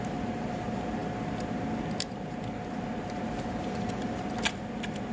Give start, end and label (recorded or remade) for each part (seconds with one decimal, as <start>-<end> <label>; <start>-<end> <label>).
0.0-5.1 recorded